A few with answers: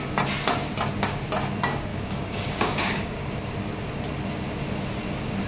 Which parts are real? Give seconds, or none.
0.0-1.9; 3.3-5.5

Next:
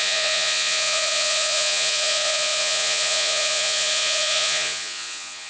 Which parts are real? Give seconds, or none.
none

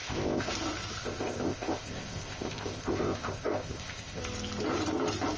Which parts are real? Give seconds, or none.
0.5-1.0; 4.2-5.4

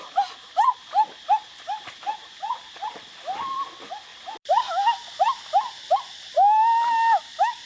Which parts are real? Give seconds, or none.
0.0-1.5; 2.3-7.7

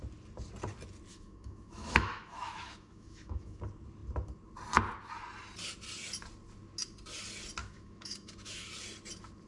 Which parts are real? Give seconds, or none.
0.0-1.1; 3.6-7.6; 8.7-9.5